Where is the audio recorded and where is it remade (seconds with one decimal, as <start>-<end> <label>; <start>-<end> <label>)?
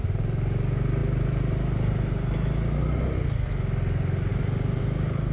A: 0.0-5.3 recorded